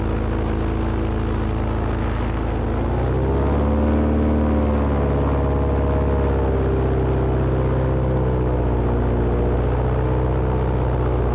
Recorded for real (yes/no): yes